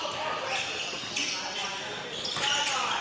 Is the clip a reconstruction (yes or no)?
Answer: no